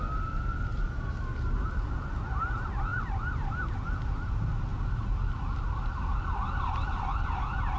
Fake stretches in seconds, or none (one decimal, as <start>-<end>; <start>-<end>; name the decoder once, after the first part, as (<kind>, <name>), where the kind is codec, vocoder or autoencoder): 0.7-1.5 (vocoder, BigVGAN v2)